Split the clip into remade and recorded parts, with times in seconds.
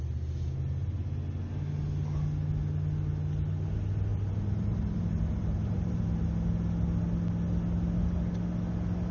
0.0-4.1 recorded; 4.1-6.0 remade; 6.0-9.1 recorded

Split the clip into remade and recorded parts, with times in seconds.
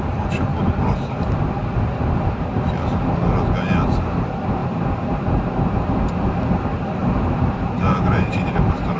0.0-0.5 recorded; 0.5-2.7 remade; 2.7-4.6 recorded; 4.6-6.5 remade; 6.5-7.0 recorded; 7.0-9.0 remade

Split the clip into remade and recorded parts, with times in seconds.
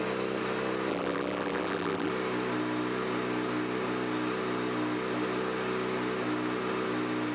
0.0-0.9 recorded; 0.9-2.1 remade; 2.1-7.3 recorded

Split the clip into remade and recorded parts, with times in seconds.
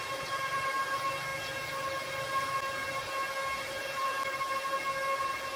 0.0-1.3 remade; 1.3-3.6 recorded; 3.6-5.6 remade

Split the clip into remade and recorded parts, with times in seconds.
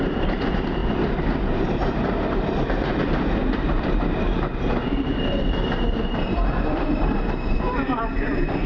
0.0-8.7 remade